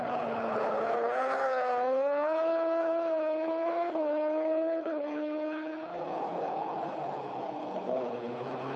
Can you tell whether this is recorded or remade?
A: remade